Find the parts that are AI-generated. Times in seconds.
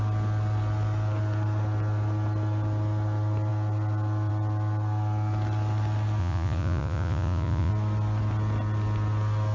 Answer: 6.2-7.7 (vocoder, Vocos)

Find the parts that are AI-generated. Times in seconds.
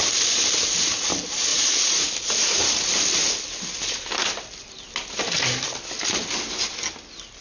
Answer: 1.5-2.1 (vocoder, Vocos)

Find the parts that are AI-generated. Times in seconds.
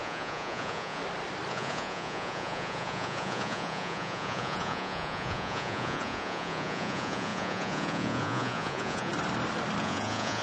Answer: 0.0-1.0 (vocoder, Vocos); 1.5-9.1; 9.8-10.4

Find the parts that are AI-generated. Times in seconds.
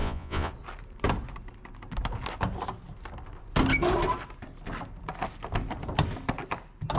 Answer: 0.0-0.5 (vocoder, Vocos)